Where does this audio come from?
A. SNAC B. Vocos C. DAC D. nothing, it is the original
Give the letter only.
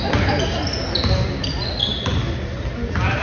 D